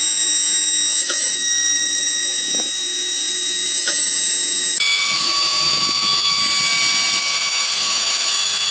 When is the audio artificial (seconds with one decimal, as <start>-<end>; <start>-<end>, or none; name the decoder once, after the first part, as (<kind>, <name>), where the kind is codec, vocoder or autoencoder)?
0.0-6.4 (autoencoder, DAC-VAE); 7.2-8.7